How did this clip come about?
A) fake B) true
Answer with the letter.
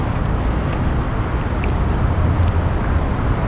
B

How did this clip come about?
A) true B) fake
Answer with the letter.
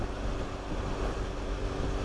A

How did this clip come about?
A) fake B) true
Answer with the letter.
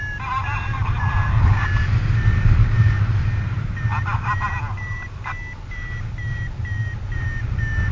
B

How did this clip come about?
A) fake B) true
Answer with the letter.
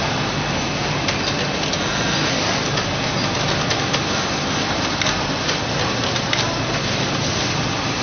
B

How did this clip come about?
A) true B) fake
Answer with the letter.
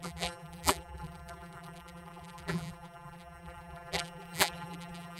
B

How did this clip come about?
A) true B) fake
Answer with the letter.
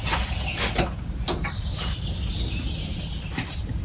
A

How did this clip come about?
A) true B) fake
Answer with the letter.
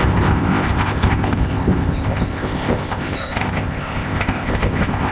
B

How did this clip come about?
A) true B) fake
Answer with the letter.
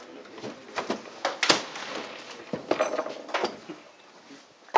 A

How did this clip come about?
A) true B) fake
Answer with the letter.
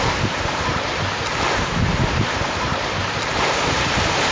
B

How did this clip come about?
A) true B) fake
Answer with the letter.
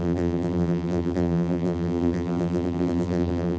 B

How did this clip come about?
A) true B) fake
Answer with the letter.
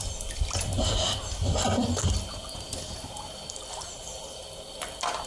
A